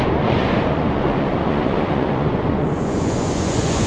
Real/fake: fake